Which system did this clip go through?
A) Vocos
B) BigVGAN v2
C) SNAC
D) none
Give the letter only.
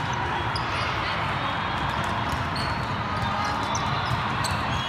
D